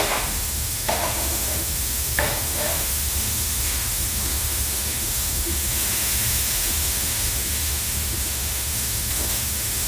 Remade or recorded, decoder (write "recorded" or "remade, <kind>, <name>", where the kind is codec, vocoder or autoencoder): remade, autoencoder, DAC-VAE